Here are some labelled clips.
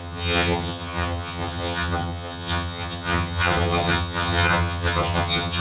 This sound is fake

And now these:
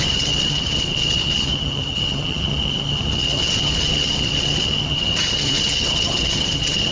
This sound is fake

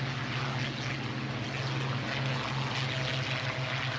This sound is real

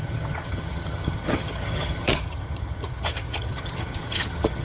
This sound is fake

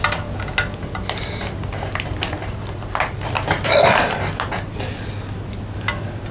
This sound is real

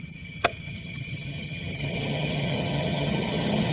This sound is fake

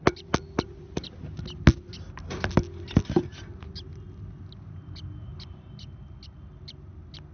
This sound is real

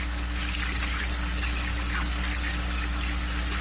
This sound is real